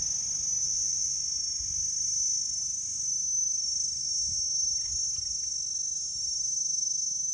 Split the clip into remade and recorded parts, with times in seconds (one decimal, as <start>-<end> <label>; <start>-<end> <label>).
0.0-0.6 recorded; 0.6-1.2 remade; 1.2-7.3 recorded